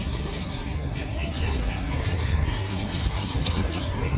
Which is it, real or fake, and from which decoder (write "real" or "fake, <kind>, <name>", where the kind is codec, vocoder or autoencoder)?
fake, codec, SNAC